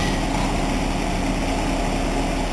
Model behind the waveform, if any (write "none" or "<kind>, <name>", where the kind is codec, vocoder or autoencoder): none